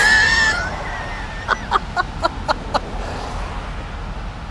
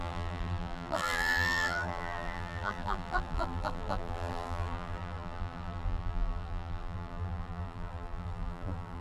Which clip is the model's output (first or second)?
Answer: second